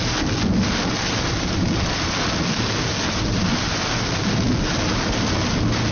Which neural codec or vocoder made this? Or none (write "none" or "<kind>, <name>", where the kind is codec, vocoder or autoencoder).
none